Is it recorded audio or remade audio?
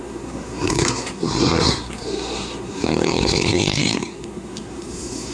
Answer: remade